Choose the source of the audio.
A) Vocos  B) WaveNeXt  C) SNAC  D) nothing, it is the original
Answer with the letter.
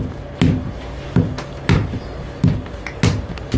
D